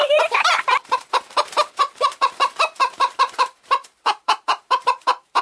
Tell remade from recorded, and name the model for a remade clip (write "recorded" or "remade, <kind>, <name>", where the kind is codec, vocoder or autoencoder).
remade, vocoder, BigVGAN v2